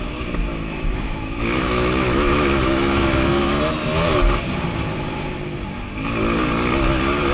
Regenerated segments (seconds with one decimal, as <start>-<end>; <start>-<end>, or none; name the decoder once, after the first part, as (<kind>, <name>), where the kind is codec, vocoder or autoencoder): 0.5-3.4 (autoencoder, DAC-VAE)